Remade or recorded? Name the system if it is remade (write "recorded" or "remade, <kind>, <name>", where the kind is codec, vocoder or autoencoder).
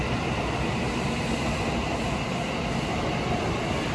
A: recorded